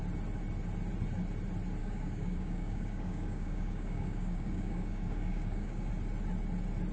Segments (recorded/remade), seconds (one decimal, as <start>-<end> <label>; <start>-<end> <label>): 0.0-1.8 recorded; 1.8-5.9 remade; 5.9-6.9 recorded